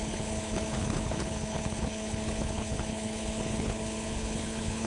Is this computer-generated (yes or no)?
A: yes